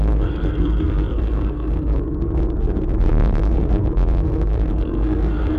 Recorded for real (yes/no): no